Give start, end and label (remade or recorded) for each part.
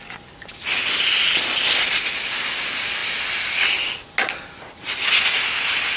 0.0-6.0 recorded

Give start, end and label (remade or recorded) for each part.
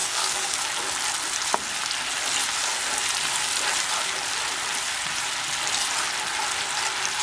0.0-0.6 remade; 0.6-7.2 recorded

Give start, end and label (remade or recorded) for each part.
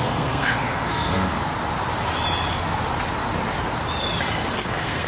0.0-1.4 remade; 1.4-4.5 recorded; 4.5-5.1 remade